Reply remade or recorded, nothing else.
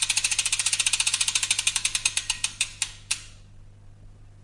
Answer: recorded